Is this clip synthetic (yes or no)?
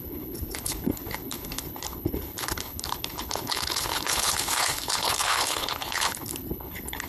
yes